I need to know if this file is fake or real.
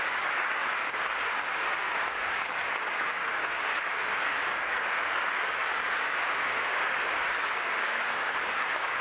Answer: fake